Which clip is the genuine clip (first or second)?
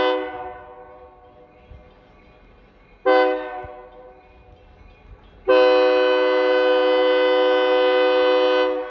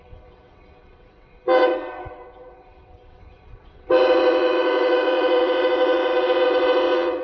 first